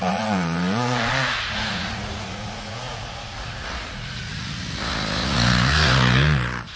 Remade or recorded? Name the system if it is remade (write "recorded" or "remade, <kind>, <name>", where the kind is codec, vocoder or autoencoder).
remade, vocoder, Vocos